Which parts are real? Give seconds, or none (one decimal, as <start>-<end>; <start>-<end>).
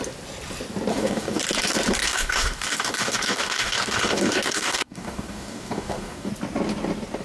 0.0-0.9; 1.4-2.0; 6.3-7.2